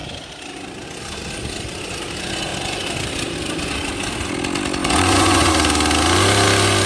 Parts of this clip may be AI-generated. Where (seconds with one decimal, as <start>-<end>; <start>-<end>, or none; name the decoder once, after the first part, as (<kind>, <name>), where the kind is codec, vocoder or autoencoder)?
4.8-5.5 (vocoder, Vocos)